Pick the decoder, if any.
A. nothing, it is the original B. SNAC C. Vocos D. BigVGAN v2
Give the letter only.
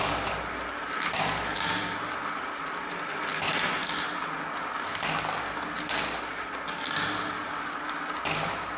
A